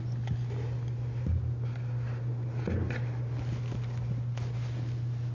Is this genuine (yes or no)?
yes